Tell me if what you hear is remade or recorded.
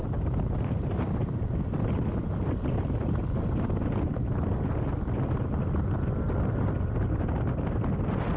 recorded